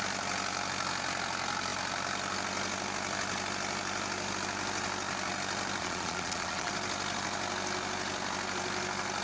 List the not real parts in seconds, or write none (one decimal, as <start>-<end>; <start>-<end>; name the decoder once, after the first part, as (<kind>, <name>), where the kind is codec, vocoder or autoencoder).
5.8-6.7 (vocoder, Vocos)